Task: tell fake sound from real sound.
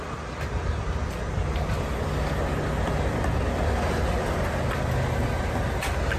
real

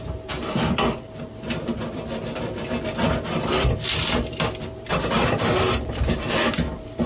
fake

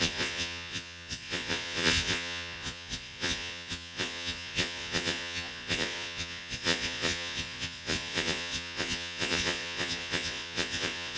fake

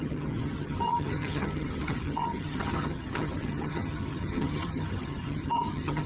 fake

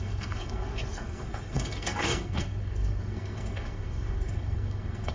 fake